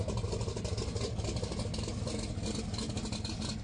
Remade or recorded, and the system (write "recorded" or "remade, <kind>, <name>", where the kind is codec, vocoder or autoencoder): recorded